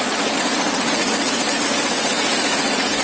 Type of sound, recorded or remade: remade